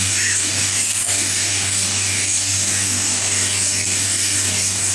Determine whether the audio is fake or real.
fake